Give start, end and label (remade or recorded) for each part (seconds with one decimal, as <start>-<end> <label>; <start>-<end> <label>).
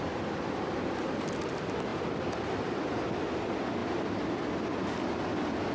0.0-5.7 recorded